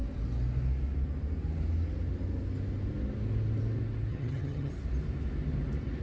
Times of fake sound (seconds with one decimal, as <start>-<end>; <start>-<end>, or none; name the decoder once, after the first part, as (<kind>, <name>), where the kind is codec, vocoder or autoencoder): 4.1-4.7 (vocoder, HiFi-GAN)